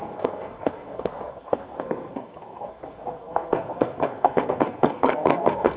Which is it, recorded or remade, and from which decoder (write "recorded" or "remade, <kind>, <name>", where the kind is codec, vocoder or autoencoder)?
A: remade, codec, SNAC